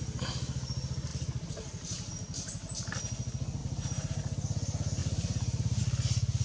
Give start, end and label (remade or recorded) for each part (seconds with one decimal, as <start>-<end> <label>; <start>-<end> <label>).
0.0-1.1 recorded; 1.1-2.1 remade; 2.1-3.6 recorded; 3.6-4.2 remade; 4.2-5.0 recorded; 5.0-5.8 remade; 5.8-6.4 recorded